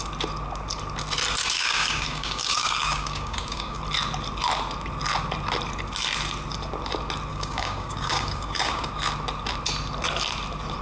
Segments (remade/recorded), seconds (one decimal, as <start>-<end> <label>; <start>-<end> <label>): 0.0-1.4 recorded; 1.4-3.8 remade; 3.8-7.3 recorded; 7.3-8.9 remade; 8.9-10.8 recorded